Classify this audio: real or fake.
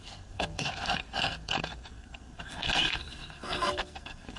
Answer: fake